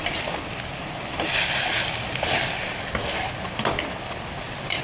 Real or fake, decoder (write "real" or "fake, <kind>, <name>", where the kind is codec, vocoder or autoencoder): real